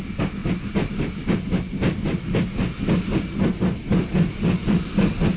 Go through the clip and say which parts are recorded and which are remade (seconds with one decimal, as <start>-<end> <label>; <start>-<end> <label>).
0.0-5.4 recorded

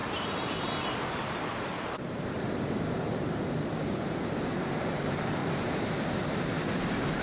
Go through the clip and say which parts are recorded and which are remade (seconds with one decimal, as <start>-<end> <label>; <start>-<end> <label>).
0.0-5.4 remade; 5.4-6.2 recorded; 6.2-7.2 remade

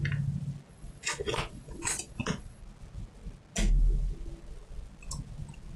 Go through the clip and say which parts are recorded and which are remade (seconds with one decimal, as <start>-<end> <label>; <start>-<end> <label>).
0.0-0.7 recorded; 0.7-2.6 remade; 2.6-5.8 recorded